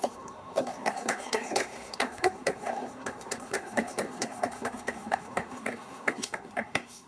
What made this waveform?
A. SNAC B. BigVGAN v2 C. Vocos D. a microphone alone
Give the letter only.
A